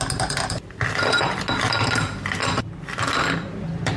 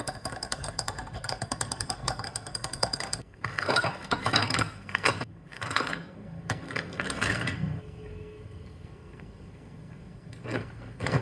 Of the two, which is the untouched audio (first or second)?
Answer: first